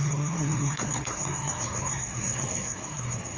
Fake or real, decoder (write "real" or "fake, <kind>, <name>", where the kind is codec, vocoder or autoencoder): fake, codec, SNAC